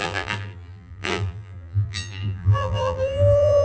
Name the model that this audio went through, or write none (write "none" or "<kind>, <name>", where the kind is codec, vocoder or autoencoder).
vocoder, BigVGAN v2